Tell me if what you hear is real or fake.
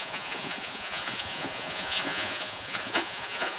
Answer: fake